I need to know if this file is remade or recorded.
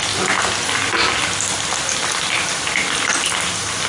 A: recorded